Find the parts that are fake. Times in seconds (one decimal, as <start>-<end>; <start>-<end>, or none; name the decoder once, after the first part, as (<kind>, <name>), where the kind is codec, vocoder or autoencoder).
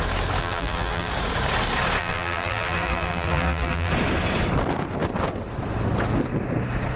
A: 0.4-1.1 (vocoder, BigVGAN v2); 2.0-3.9